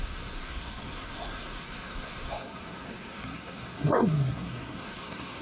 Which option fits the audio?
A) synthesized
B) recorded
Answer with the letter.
A